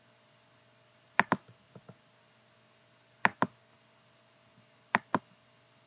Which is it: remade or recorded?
recorded